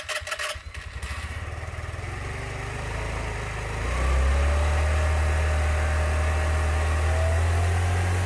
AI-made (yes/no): no